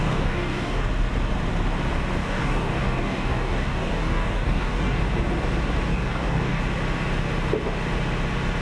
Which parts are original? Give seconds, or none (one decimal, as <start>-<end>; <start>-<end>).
0.9-2.2; 5.0-5.9; 6.6-8.6